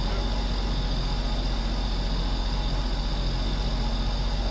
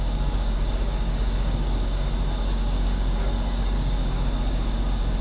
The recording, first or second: first